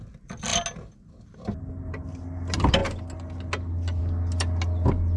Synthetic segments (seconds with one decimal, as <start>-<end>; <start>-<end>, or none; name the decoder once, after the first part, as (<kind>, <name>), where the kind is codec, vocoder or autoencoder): none